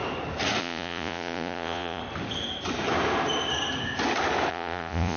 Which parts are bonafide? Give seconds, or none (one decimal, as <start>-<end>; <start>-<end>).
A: 0.0-0.6; 2.0-4.5